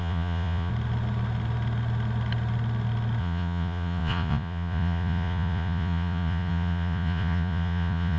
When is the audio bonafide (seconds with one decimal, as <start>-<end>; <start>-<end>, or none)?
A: 0.7-3.2